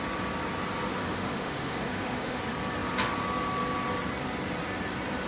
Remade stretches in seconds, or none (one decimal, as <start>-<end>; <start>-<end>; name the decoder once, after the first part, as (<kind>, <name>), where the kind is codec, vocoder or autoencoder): 0.9-2.4 (autoencoder, DAC-VAE)